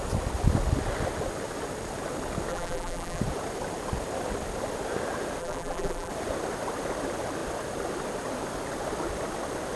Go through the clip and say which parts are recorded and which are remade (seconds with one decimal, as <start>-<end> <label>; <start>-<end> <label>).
0.0-2.5 recorded; 2.5-3.2 remade; 3.2-5.4 recorded; 5.4-6.1 remade; 6.1-9.8 recorded